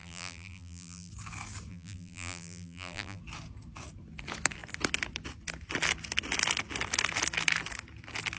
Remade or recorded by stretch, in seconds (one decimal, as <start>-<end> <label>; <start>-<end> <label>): 0.0-1.1 remade; 1.1-1.7 recorded; 1.7-3.2 remade; 3.2-8.4 recorded